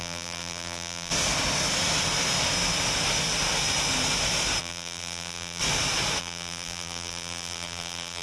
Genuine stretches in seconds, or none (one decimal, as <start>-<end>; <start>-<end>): 1.1-4.6; 5.6-6.2